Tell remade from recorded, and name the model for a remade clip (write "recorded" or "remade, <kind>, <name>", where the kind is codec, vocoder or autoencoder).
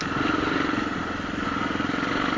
recorded